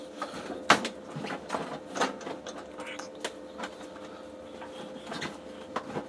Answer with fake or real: real